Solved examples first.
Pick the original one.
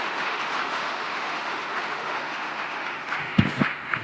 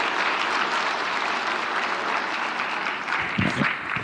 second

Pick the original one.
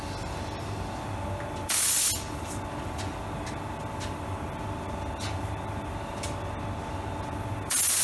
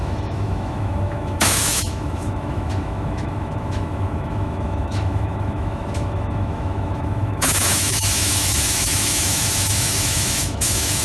first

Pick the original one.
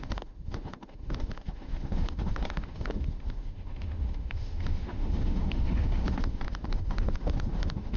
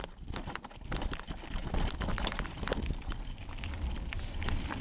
second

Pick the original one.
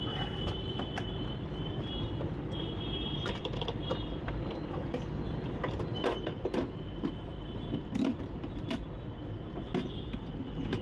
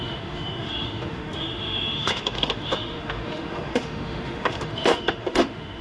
first